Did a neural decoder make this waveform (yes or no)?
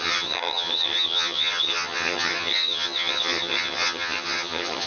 yes